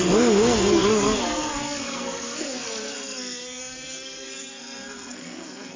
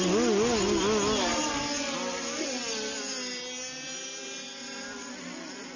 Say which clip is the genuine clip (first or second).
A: second